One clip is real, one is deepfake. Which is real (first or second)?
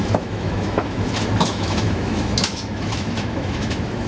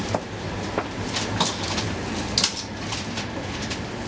second